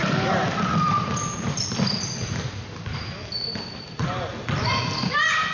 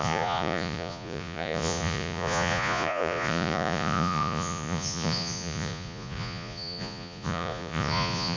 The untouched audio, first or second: first